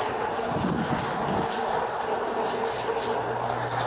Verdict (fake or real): real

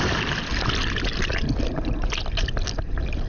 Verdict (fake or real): real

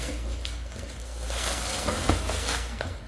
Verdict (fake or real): fake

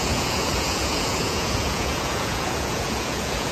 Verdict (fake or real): fake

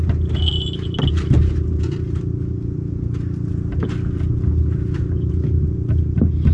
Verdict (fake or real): real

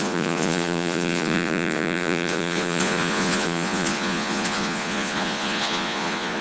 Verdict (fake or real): fake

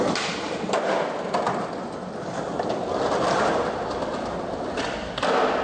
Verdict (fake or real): real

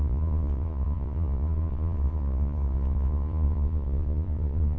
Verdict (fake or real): fake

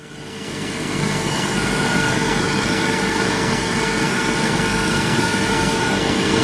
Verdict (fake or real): fake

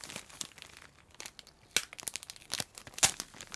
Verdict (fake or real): real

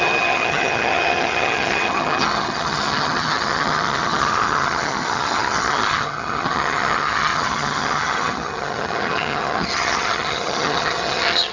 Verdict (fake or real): fake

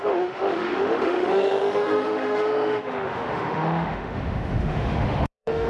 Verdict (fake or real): fake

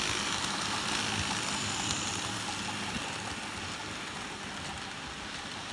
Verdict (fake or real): real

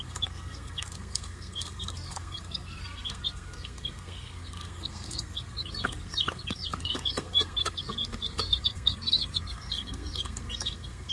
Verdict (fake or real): fake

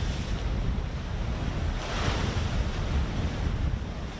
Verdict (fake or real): real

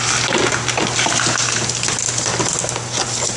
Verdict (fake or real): real